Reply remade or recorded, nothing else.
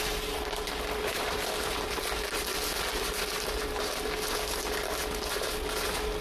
recorded